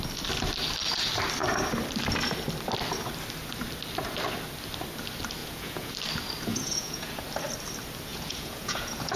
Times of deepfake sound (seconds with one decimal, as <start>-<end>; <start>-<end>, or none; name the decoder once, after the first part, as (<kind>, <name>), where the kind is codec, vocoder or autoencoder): 5.4-5.9 (vocoder, Vocos); 6.5-7.1; 8.1-9.2